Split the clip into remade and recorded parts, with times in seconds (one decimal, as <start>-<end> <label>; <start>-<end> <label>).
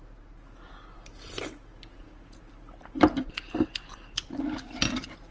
0.0-1.9 recorded; 1.9-2.4 remade; 2.4-5.3 recorded